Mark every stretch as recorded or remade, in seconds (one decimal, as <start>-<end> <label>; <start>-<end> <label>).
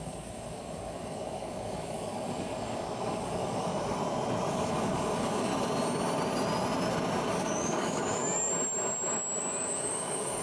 0.0-3.7 remade; 3.7-4.5 recorded; 4.5-5.5 remade; 5.5-7.3 recorded; 7.3-8.5 remade; 8.5-9.4 recorded; 9.4-10.4 remade